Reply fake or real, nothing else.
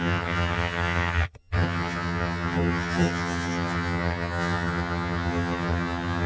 fake